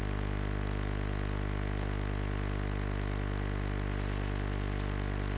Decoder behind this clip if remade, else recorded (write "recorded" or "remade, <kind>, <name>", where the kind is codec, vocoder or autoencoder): recorded